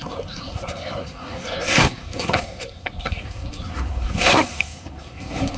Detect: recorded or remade remade